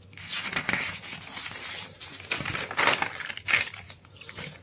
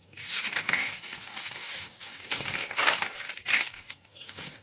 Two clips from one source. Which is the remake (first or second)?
second